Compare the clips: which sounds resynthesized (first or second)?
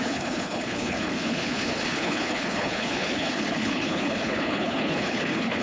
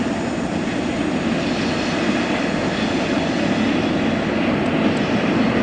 first